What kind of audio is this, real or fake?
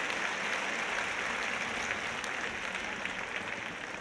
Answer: real